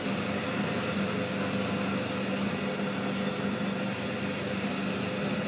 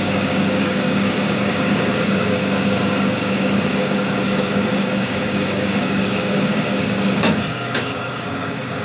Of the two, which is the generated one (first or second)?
second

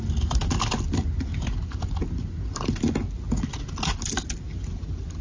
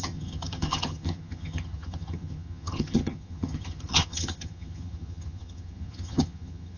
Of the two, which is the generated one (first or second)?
second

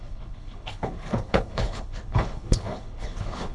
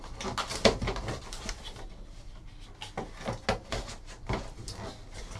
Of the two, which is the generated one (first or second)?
first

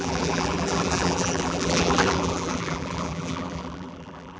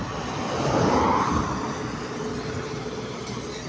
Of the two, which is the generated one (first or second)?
first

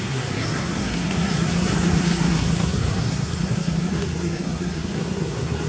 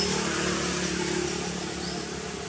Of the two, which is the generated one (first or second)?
first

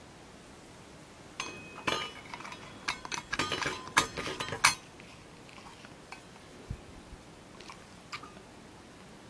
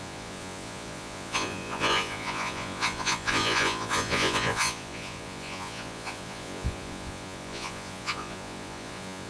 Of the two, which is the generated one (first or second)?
second